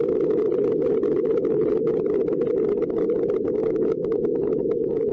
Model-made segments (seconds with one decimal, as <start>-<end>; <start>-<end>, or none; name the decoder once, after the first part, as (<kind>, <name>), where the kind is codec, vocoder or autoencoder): 3.6-4.6 (codec, DAC)